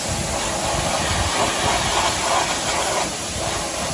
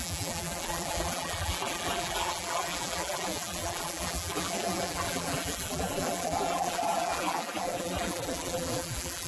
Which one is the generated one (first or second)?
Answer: second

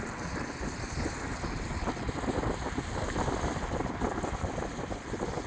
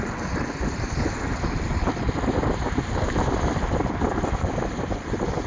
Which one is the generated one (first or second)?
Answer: second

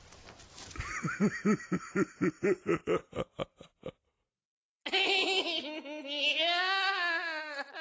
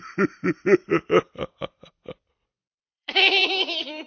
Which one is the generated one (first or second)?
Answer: second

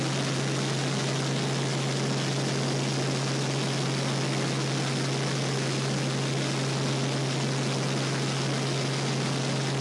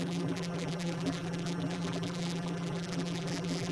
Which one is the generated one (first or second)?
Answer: second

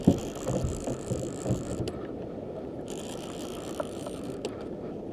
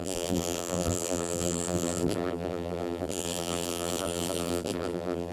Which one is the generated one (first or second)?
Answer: second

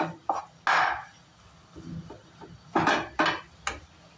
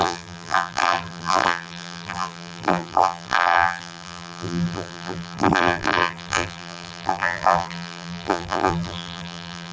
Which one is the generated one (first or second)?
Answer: second